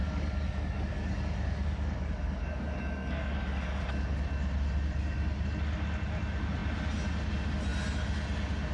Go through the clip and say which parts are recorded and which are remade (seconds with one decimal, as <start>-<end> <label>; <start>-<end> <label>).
0.0-3.8 remade; 3.8-8.7 recorded